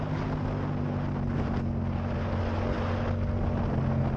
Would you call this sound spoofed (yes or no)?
no